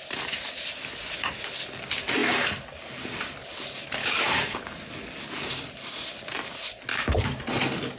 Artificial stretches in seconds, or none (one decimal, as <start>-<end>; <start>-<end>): 4.0-4.6; 6.9-7.4